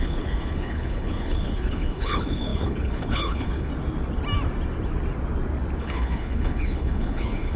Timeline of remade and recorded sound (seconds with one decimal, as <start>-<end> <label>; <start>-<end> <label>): 0.0-3.7 remade; 3.7-5.8 recorded; 5.8-7.6 remade